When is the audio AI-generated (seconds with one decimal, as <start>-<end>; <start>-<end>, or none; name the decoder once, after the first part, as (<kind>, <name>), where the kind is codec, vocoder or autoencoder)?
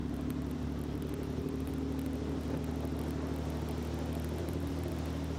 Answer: 0.0-1.7 (vocoder, BigVGAN v2); 4.4-4.9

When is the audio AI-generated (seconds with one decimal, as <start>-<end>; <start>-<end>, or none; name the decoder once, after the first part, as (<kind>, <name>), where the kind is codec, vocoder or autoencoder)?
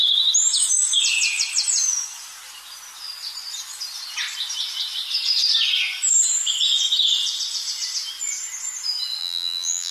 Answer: 9.2-9.9 (vocoder, BigVGAN v2)